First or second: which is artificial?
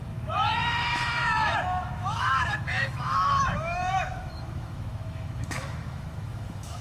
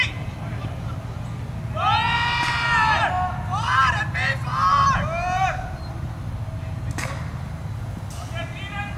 first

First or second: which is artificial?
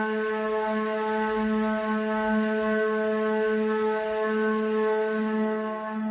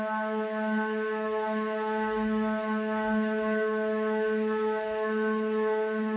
second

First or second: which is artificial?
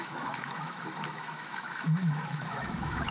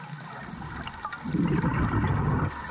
first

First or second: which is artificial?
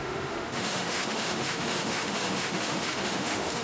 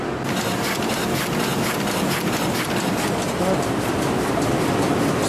first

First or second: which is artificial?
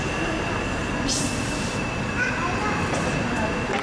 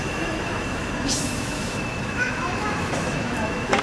second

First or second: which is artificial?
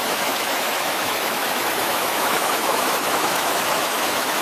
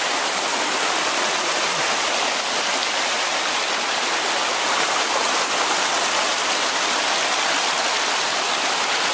first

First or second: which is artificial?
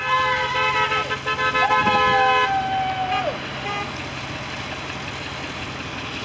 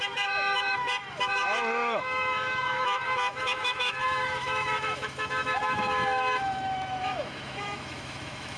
second